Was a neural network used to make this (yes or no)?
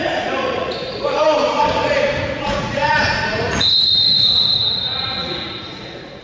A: yes